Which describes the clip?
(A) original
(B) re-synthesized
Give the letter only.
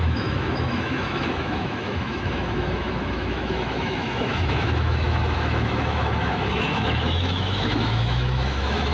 B